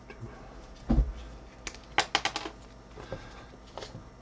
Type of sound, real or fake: real